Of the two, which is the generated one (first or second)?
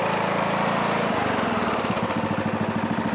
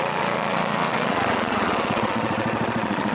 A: second